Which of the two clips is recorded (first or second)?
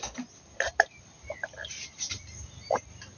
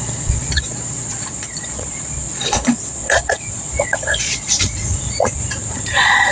first